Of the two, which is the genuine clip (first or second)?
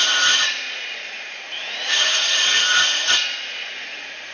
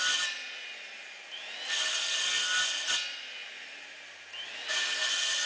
second